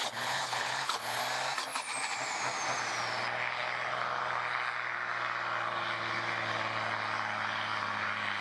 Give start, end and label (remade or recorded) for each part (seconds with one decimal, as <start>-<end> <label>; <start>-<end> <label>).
0.0-1.2 remade; 1.2-8.4 recorded